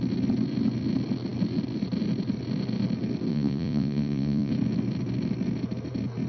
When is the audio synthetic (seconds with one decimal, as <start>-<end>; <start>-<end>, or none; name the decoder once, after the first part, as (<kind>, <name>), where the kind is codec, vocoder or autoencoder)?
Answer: 3.3-4.5 (vocoder, Vocos)